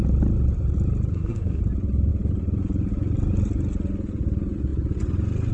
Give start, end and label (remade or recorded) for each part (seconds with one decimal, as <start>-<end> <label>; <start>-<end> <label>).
0.0-1.1 recorded; 1.1-1.6 remade; 1.6-5.5 recorded